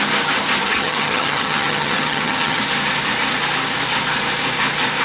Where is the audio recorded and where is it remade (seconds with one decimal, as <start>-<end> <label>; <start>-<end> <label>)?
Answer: 0.0-0.6 recorded; 0.6-2.6 remade; 2.6-5.0 recorded